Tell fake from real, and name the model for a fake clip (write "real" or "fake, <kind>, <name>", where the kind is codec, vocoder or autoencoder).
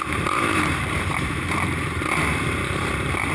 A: fake, vocoder, BigVGAN v2